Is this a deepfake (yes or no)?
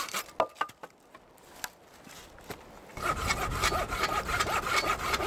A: no